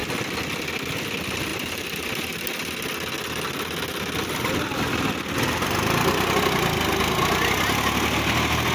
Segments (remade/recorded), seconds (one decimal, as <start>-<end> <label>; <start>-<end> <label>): 0.0-1.5 recorded; 1.5-2.4 remade; 2.4-8.7 recorded